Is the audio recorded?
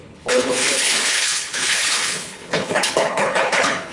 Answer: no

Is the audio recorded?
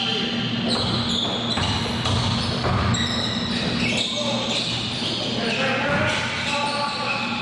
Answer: yes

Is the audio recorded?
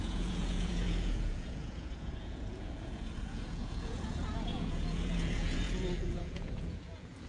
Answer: no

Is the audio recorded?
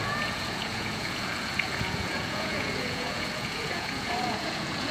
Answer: no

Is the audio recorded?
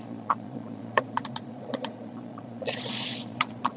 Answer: no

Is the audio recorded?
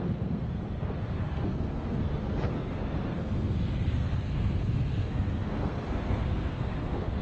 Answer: no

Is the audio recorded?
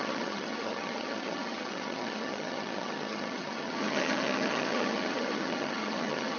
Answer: no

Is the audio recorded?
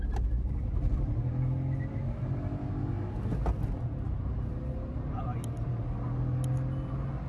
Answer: yes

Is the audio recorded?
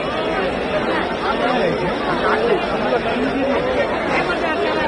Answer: yes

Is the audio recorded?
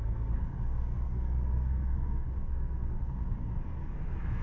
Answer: no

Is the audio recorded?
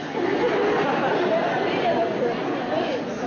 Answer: yes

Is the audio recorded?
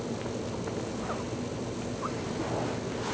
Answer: yes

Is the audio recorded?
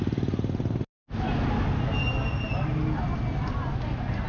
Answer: yes